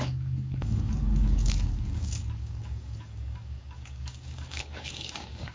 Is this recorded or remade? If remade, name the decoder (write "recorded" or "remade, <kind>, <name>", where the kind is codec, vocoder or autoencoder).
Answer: remade, codec, DAC